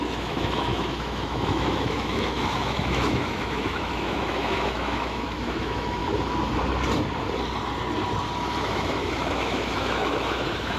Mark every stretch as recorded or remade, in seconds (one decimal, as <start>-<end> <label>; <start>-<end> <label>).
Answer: 0.0-6.0 remade; 6.0-8.6 recorded; 8.6-10.8 remade